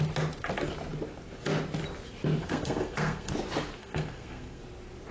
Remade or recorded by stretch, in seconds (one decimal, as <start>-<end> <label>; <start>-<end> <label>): 0.0-2.4 recorded; 2.4-3.3 remade; 3.3-3.8 recorded; 3.8-4.6 remade; 4.6-5.1 recorded

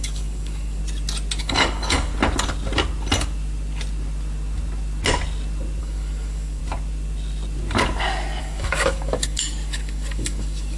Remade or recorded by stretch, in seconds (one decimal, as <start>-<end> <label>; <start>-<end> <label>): 0.0-0.8 remade; 0.8-1.4 recorded; 1.4-2.1 remade; 2.1-5.8 recorded; 5.8-6.6 remade; 6.6-8.4 recorded; 8.4-10.8 remade

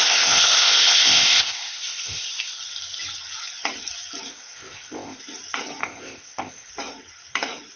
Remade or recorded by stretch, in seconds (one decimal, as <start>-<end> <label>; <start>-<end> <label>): 0.0-2.6 remade; 2.6-4.3 recorded; 4.3-5.2 remade; 5.2-5.8 recorded; 5.8-6.7 remade; 6.7-7.8 recorded

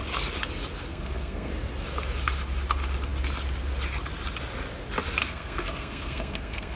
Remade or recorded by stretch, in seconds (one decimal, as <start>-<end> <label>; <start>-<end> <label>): 0.0-0.9 recorded; 0.9-1.5 remade; 1.5-5.2 recorded; 5.2-6.8 remade

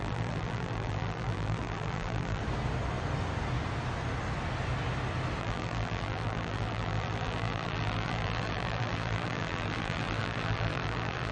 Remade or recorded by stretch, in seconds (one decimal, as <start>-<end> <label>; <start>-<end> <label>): 0.0-2.4 remade; 2.4-5.4 recorded; 5.4-11.3 remade

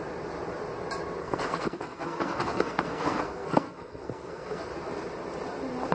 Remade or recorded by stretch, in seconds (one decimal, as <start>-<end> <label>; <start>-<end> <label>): 0.0-1.2 recorded; 1.2-4.7 remade; 4.7-5.9 recorded

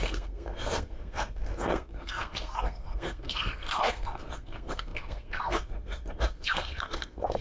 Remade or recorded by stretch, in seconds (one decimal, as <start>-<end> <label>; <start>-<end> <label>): 0.0-7.4 remade

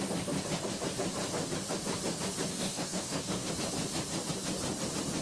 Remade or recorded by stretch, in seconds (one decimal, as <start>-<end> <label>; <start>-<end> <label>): 0.0-2.5 recorded; 2.5-3.5 remade; 3.5-5.2 recorded